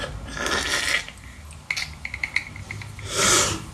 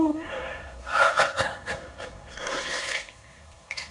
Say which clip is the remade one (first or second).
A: second